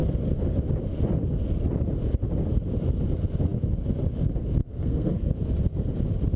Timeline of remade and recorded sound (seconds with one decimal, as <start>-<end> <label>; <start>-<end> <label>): 0.0-4.6 recorded; 4.6-5.3 remade; 5.3-6.4 recorded